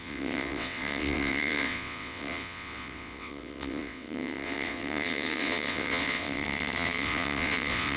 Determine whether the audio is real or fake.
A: fake